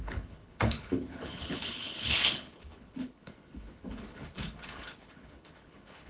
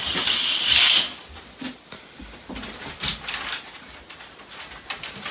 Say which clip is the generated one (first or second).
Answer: first